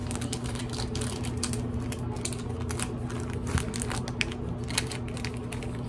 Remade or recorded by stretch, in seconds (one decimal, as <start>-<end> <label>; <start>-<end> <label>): 0.0-0.6 remade; 0.6-5.9 recorded